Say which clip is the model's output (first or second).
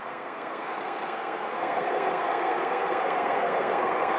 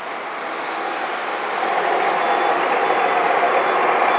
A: first